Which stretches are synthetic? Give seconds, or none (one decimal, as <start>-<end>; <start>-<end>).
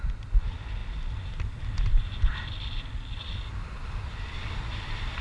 none